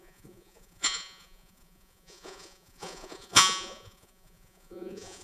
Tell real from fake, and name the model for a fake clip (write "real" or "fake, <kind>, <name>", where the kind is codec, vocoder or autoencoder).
fake, vocoder, Vocos